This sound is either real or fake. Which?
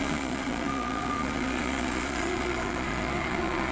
fake